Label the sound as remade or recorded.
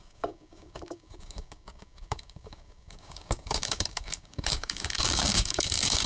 remade